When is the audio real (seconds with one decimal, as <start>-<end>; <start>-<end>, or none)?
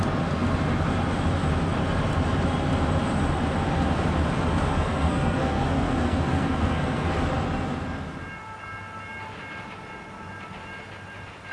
0.0-4.7; 7.1-11.5